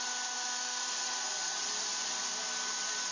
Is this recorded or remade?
recorded